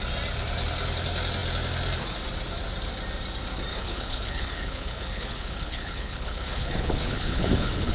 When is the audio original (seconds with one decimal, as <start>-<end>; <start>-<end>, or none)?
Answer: 0.0-3.7